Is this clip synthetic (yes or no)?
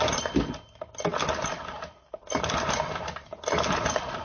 yes